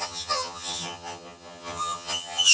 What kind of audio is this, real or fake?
fake